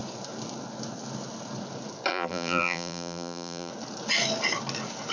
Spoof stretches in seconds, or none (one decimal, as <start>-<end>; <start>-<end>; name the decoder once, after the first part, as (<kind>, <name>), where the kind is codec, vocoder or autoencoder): 2.1-3.7 (vocoder, BigVGAN v2)